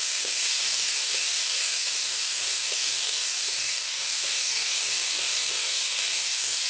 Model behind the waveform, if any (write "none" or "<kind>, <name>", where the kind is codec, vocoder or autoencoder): codec, DAC